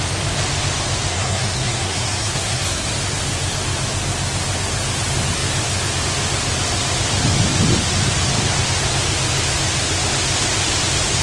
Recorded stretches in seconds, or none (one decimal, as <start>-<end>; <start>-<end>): 0.0-1.1; 2.9-11.2